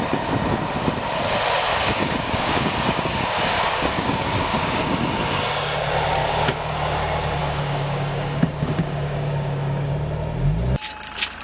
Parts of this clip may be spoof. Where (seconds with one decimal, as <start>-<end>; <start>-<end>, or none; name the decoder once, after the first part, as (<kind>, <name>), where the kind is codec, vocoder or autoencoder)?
1.7-4.8 (codec, DAC); 6.2-6.7; 7.4-9.9